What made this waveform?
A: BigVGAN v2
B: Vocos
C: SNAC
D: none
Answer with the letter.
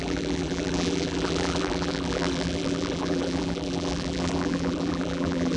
A